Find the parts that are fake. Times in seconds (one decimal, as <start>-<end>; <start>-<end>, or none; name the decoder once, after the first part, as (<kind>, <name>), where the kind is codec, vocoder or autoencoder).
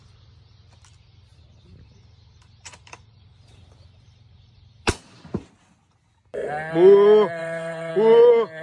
1.3-5.5 (vocoder, BigVGAN v2); 7.4-7.9